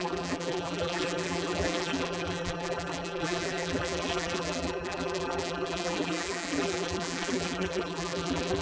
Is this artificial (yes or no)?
yes